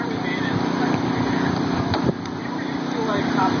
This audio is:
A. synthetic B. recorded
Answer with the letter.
A